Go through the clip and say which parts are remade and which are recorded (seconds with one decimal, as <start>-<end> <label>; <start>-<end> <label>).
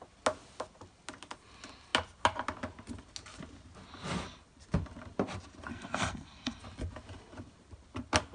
0.0-5.7 recorded; 5.7-6.6 remade; 6.6-8.3 recorded